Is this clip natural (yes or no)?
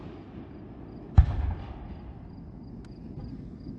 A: yes